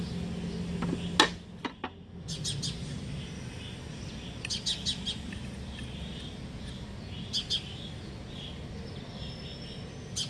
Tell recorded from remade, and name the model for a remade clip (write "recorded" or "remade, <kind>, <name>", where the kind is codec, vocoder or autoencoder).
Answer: recorded